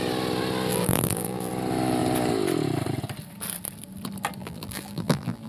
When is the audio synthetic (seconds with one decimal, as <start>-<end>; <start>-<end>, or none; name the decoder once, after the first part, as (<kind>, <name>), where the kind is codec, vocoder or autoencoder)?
0.7-1.5 (vocoder, BigVGAN v2); 4.4-5.5